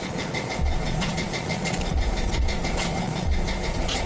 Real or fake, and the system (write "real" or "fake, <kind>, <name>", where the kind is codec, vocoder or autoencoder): fake, vocoder, Vocos